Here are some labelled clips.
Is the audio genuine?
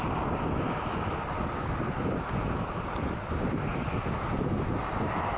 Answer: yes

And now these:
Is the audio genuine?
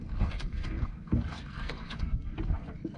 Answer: no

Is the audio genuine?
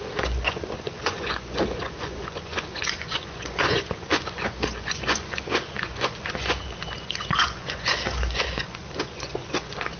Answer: no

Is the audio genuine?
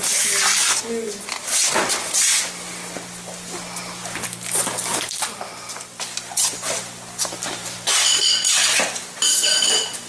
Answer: yes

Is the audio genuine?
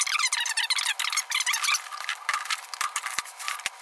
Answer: yes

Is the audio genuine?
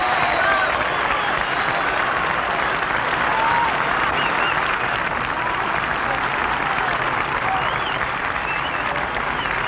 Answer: no